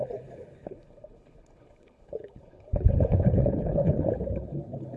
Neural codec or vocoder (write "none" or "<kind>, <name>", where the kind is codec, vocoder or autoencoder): codec, HILCodec